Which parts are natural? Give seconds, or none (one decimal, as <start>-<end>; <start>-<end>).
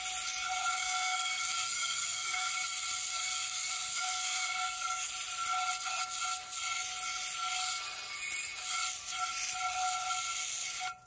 0.0-0.8; 2.5-3.1; 5.1-11.1